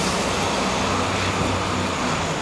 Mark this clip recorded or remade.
recorded